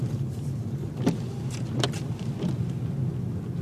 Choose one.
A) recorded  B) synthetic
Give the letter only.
A